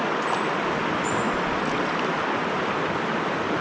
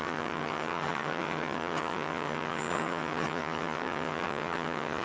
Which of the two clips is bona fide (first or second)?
first